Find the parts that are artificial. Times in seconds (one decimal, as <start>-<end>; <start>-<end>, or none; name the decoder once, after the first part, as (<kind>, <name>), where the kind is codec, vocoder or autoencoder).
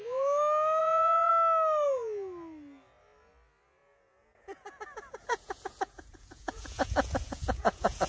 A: 0.8-1.3 (vocoder, Vocos); 3.8-8.1